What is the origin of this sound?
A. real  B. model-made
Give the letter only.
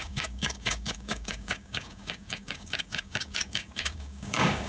B